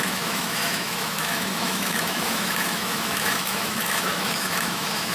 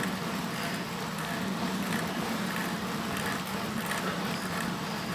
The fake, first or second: first